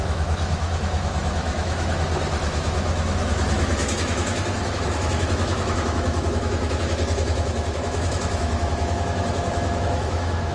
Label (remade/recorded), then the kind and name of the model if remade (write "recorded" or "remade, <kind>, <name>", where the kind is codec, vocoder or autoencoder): remade, autoencoder, DAC-VAE